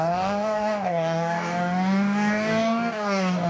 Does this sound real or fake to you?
fake